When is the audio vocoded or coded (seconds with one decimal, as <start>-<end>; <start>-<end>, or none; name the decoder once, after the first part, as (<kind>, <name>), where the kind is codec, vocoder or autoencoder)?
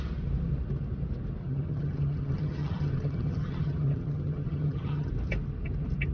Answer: 1.4-5.1 (vocoder, HiFi-GAN)